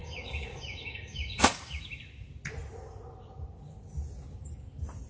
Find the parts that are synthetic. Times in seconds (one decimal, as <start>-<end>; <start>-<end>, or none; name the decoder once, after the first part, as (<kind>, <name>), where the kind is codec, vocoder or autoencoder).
0.0-1.8 (codec, DAC)